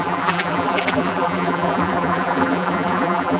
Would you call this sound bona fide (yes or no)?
no